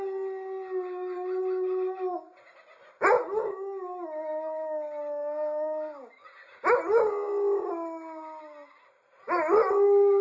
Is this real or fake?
real